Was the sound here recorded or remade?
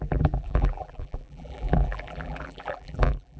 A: remade